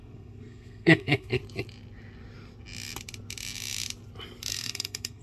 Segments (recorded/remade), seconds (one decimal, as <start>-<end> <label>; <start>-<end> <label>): 0.0-1.4 remade; 1.4-4.5 recorded; 4.5-5.2 remade